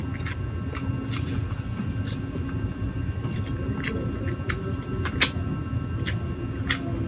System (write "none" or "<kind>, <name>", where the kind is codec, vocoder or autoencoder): none